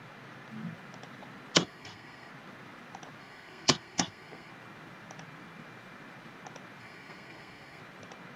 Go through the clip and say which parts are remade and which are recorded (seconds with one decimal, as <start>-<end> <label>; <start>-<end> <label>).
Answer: 0.0-1.6 recorded; 1.6-2.3 remade; 2.3-3.2 recorded; 3.2-4.5 remade; 4.5-6.8 recorded; 6.8-7.8 remade; 7.8-8.4 recorded